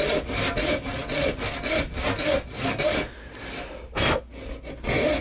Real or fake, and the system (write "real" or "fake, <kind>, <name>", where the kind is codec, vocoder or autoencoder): real